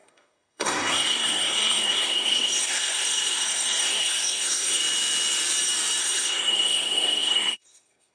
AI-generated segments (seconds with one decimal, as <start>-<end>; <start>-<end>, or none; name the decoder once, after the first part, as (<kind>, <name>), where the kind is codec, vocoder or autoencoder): 0.0-4.8 (codec, SNAC); 6.0-8.1